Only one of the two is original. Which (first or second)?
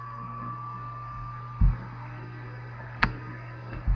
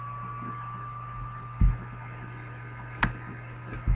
second